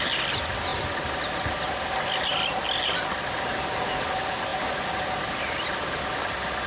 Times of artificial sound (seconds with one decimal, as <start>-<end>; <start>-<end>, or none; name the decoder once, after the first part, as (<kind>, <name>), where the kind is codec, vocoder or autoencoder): none